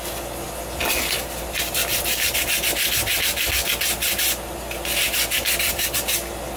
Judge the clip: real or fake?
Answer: real